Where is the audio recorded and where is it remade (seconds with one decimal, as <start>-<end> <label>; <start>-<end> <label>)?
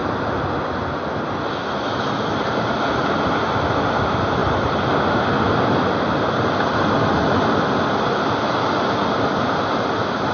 0.0-10.3 recorded